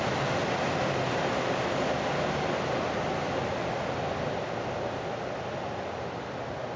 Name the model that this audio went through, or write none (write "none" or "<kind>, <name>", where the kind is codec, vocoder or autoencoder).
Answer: none